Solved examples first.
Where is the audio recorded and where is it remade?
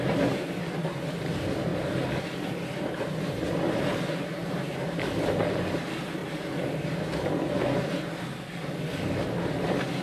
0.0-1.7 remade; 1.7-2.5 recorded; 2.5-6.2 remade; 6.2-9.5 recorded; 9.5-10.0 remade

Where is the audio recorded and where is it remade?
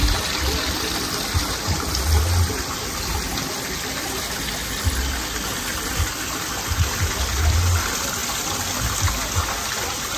0.0-10.2 recorded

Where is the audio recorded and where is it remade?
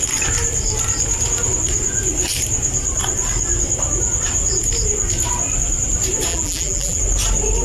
0.0-6.3 recorded; 6.3-7.0 remade; 7.0-7.6 recorded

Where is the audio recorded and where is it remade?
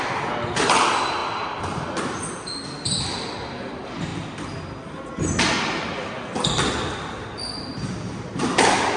0.0-7.7 recorded; 7.7-8.3 remade; 8.3-9.0 recorded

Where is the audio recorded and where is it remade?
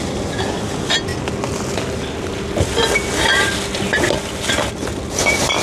0.0-1.1 remade; 1.1-4.5 recorded; 4.5-5.6 remade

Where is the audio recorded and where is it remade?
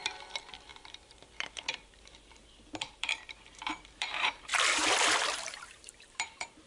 0.0-4.5 remade; 4.5-5.3 recorded; 5.3-6.7 remade